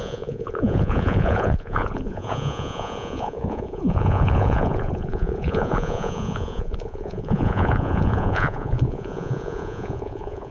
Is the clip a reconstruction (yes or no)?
yes